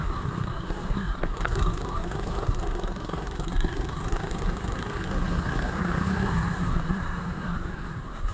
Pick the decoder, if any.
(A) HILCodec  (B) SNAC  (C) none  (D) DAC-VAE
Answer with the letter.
B